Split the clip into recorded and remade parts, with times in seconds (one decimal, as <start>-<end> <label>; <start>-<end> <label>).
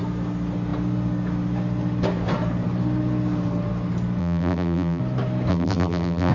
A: 0.0-4.2 recorded; 4.2-5.0 remade; 5.0-5.5 recorded; 5.5-6.3 remade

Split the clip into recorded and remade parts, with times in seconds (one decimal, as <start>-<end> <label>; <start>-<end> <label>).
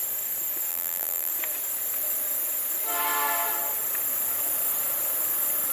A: 0.0-0.7 recorded; 0.7-1.3 remade; 1.3-5.7 recorded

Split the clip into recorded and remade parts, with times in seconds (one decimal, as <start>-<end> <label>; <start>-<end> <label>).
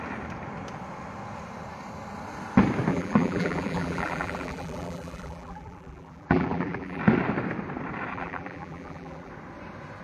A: 0.0-2.9 recorded; 2.9-7.0 remade; 7.0-8.1 recorded; 8.1-9.3 remade; 9.3-10.0 recorded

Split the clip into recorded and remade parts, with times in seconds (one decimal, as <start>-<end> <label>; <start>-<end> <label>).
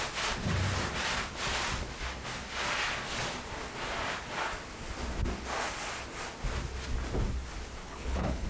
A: 0.0-7.8 recorded; 7.8-8.5 remade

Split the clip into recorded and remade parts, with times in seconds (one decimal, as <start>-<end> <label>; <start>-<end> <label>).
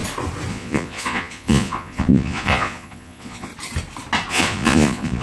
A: 0.0-0.5 recorded; 0.5-3.5 remade; 3.5-4.3 recorded; 4.3-5.2 remade